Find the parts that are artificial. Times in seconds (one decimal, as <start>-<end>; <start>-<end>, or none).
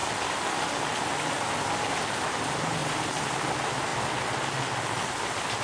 none